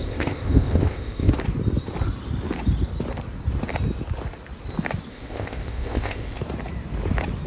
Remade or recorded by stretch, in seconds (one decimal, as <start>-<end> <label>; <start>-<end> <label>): 0.0-1.3 remade; 1.3-5.1 recorded; 5.1-6.4 remade; 6.4-7.5 recorded